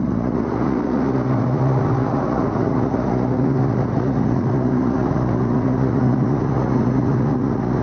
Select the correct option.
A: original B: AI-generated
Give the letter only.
B